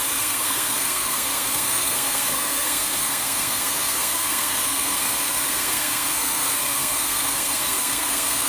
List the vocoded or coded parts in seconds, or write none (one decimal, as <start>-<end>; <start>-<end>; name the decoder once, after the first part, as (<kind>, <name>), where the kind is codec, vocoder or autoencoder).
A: 0.0-8.5 (codec, SNAC)